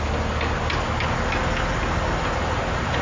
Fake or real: real